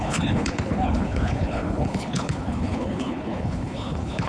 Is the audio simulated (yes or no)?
yes